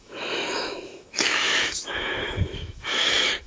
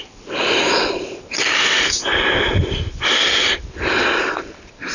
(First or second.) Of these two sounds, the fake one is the first